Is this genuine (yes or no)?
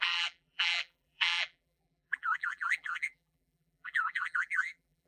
no